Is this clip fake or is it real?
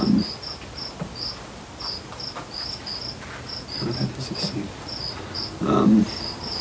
real